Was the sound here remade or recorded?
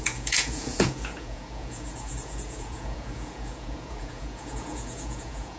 remade